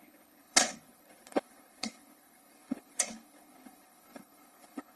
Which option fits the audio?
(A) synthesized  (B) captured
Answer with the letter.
A